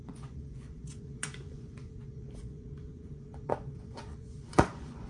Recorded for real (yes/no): no